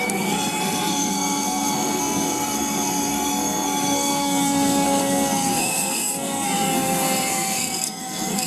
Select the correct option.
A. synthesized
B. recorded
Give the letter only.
A